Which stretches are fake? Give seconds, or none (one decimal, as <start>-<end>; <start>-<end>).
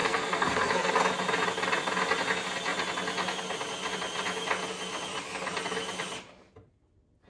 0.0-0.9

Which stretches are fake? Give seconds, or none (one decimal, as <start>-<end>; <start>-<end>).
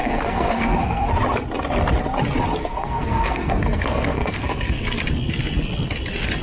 0.0-1.1; 2.6-5.0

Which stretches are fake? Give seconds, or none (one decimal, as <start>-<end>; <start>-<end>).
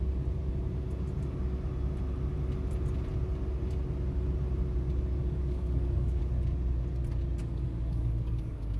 5.2-6.2; 7.4-8.8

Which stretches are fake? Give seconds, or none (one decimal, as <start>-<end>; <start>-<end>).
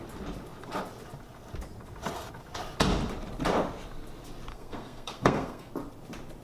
4.5-5.7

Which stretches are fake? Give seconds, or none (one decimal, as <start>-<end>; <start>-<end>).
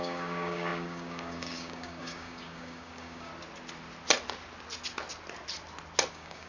0.0-3.3; 6.1-6.5